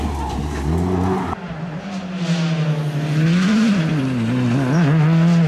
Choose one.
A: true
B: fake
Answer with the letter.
A